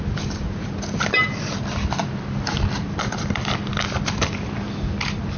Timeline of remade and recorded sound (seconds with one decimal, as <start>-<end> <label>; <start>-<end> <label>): 0.0-5.4 recorded